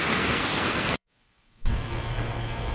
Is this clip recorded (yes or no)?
no